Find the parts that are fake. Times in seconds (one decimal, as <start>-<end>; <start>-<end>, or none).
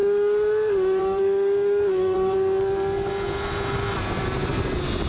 0.0-3.1